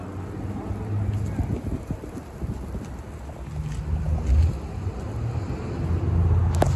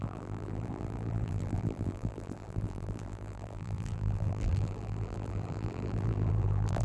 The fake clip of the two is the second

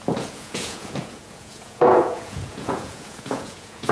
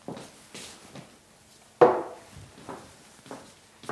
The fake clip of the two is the first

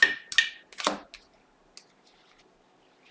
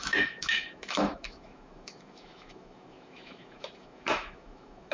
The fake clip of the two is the second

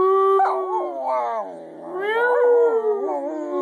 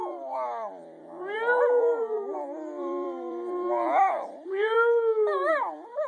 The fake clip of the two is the second